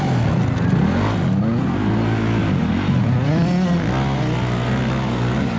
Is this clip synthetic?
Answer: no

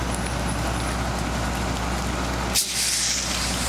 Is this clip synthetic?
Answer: no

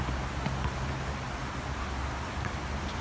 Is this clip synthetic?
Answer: no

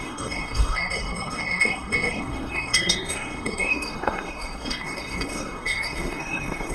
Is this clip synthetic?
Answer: yes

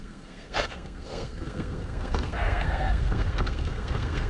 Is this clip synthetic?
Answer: yes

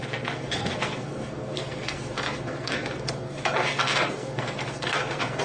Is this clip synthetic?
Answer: yes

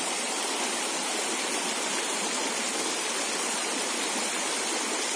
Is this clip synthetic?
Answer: no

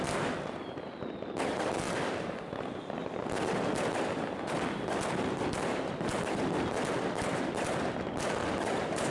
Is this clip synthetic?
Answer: no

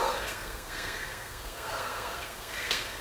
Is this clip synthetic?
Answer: yes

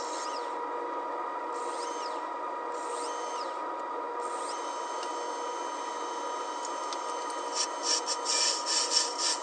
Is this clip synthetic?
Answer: no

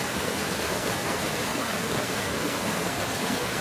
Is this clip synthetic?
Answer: yes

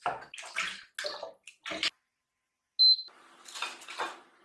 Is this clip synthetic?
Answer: no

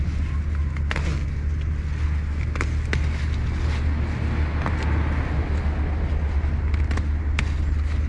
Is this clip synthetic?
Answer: no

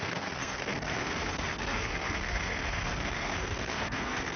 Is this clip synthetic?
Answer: yes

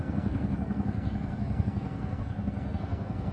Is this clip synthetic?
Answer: yes